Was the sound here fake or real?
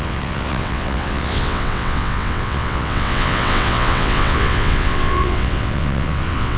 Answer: fake